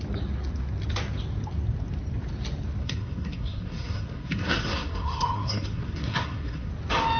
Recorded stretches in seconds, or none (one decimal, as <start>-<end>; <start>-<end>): 0.0-2.8; 6.7-7.2